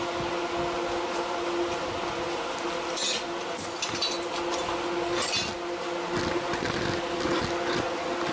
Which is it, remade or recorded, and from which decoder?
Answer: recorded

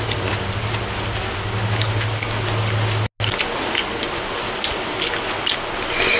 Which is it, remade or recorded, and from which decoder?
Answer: recorded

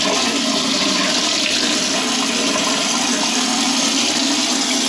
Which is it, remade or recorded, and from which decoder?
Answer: recorded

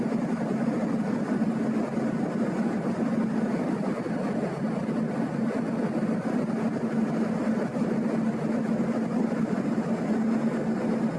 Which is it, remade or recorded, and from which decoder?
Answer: recorded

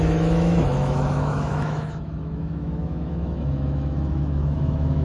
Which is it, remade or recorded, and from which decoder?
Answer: remade, autoencoder, DAC-VAE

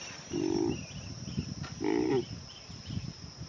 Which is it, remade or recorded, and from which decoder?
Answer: recorded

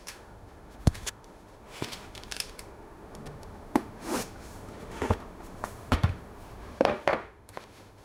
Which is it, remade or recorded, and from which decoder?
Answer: remade, autoencoder, DAC-VAE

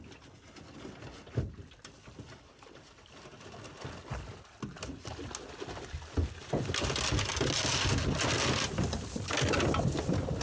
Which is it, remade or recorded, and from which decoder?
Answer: recorded